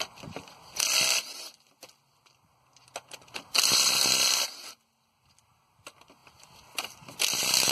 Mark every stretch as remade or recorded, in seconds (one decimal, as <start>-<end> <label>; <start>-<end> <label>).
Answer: 0.0-7.7 recorded